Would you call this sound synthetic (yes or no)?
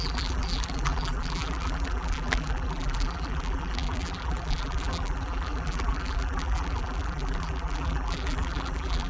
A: yes